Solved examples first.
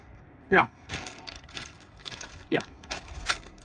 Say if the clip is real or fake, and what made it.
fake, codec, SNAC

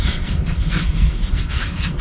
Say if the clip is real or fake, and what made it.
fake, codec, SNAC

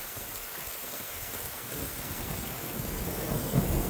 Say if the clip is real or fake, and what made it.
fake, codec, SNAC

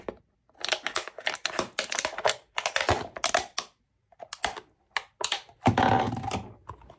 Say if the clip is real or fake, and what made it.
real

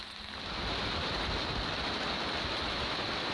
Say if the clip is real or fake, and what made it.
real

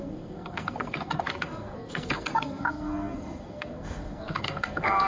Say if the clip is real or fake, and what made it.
fake, codec, SNAC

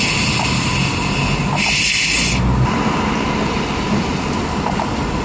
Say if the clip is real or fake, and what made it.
real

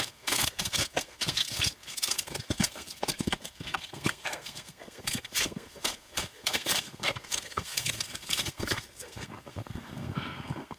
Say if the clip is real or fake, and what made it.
fake, codec, SNAC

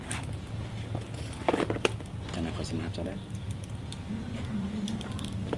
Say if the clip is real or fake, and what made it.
real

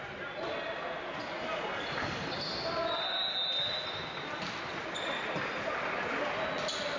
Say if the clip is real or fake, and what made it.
real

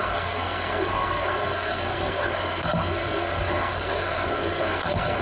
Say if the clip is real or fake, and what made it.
fake, codec, SNAC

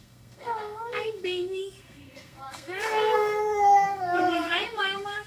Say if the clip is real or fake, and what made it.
fake, codec, SNAC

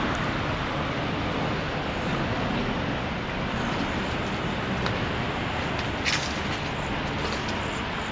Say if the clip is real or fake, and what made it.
real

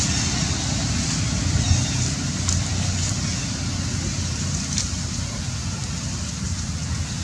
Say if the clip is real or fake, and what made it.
real